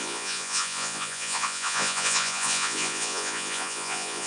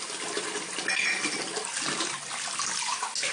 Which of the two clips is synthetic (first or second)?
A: first